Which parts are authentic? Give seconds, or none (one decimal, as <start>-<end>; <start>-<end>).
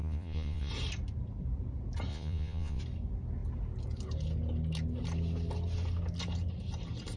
0.7-2.1; 2.8-7.2